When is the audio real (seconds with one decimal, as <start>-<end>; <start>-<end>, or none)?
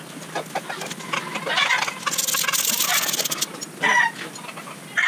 0.0-5.1